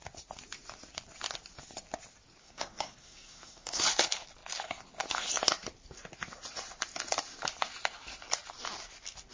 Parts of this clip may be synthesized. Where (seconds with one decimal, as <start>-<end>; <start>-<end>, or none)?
2.4-3.8